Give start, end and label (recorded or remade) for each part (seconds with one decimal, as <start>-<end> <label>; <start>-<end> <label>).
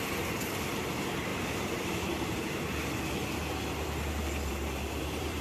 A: 0.0-5.4 recorded